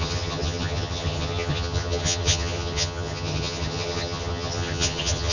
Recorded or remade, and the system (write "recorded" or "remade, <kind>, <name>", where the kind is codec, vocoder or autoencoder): remade, vocoder, HiFi-GAN